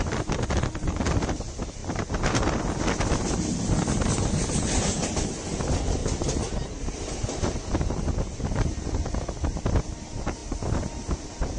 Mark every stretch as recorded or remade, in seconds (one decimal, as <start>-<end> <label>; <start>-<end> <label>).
0.0-1.8 remade; 1.8-5.6 recorded; 5.6-6.0 remade; 6.0-9.8 recorded; 9.8-10.4 remade; 10.4-11.2 recorded; 11.2-11.6 remade